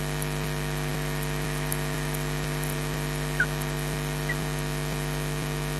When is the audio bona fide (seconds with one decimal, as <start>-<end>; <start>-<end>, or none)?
0.0-5.8